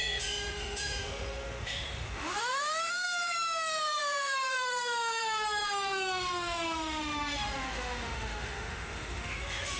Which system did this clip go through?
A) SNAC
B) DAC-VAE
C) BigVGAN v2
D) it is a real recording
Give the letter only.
B